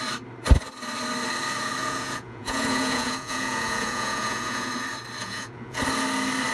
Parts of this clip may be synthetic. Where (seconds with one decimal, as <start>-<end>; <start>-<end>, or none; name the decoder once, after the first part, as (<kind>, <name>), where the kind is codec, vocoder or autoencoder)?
1.8-4.7 (vocoder, Vocos); 5.2-5.8